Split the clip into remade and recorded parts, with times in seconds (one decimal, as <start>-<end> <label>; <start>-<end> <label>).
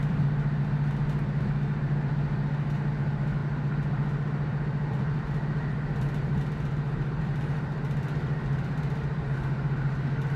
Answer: 0.0-10.4 recorded